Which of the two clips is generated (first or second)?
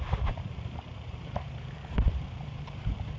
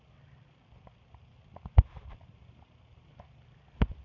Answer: first